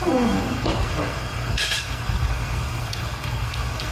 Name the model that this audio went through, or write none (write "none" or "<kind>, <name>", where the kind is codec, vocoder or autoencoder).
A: codec, SNAC